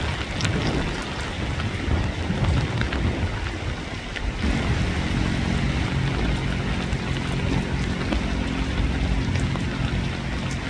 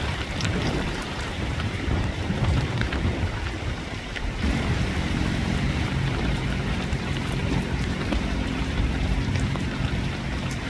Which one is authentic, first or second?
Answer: first